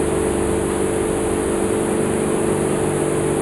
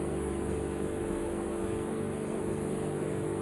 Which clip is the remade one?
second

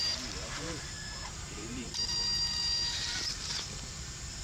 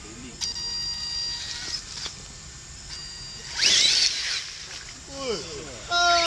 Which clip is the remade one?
first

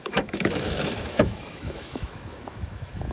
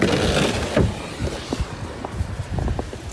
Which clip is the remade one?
first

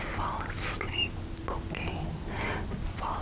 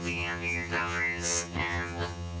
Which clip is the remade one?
second